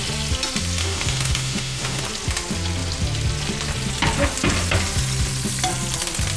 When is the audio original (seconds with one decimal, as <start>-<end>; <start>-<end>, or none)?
0.0-0.8; 2.0-6.4